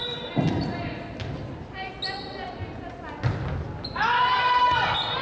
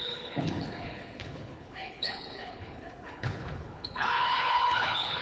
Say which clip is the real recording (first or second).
first